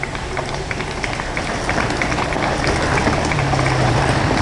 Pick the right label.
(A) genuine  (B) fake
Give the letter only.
A